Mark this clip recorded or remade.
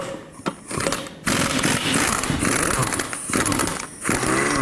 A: recorded